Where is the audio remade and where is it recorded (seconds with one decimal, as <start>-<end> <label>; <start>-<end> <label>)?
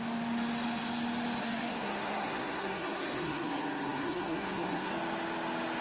0.0-1.4 recorded; 1.4-4.9 remade; 4.9-5.8 recorded